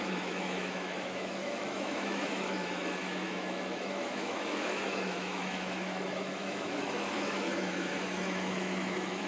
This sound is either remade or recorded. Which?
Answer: remade